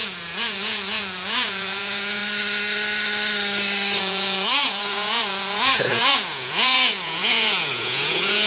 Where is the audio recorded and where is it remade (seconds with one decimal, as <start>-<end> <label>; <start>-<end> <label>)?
0.0-2.2 remade; 2.2-4.0 recorded; 4.0-8.5 remade